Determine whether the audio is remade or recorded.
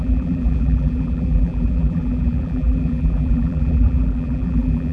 remade